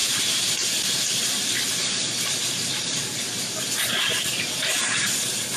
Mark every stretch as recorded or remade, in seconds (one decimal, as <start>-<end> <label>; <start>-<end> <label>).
0.0-5.6 remade